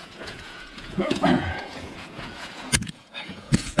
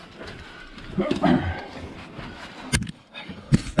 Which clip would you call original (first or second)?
second